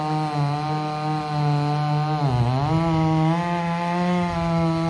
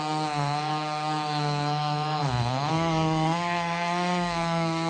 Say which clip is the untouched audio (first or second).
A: first